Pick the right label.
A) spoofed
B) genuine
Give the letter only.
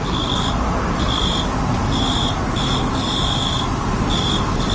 B